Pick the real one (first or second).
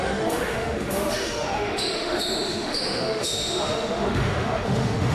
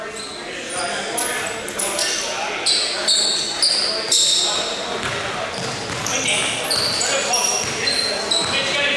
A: second